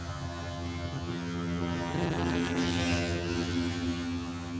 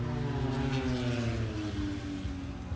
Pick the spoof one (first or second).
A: first